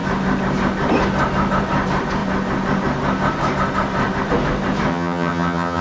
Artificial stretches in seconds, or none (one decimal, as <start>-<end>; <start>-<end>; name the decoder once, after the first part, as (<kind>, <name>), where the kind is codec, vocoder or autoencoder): 4.9-5.8 (vocoder, HiFi-GAN)